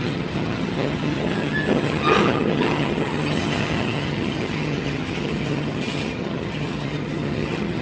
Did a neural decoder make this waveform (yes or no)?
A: yes